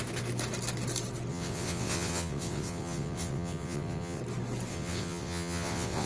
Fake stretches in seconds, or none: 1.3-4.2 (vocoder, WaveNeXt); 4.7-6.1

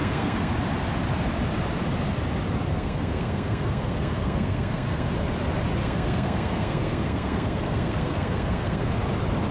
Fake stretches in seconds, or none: 0.0-0.5 (codec, SNAC); 2.7-5.1; 5.8-8.9